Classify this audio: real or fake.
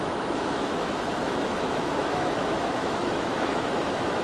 fake